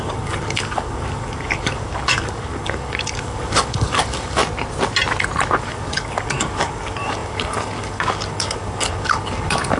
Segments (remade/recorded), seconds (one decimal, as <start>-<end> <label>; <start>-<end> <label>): 0.0-4.4 remade; 4.4-5.6 recorded; 5.6-9.8 remade